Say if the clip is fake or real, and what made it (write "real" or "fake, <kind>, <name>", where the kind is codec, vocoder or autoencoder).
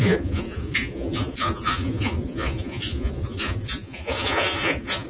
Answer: fake, vocoder, Vocos